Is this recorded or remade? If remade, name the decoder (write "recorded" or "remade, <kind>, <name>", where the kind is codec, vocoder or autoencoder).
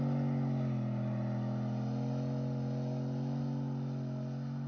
recorded